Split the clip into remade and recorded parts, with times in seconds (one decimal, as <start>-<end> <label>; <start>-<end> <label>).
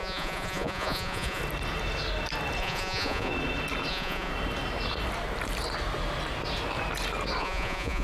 0.0-1.4 remade; 1.4-2.6 recorded; 2.6-3.3 remade; 3.3-3.9 recorded; 3.9-4.3 remade; 4.3-7.4 recorded; 7.4-8.0 remade